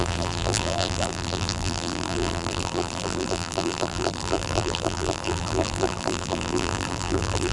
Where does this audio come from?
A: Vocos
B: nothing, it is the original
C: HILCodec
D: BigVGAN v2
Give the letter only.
D